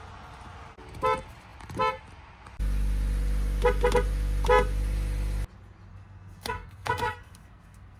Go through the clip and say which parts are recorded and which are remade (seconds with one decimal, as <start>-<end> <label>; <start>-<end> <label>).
0.0-5.9 recorded; 5.9-8.0 remade